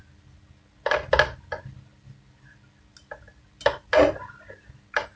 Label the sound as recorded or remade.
recorded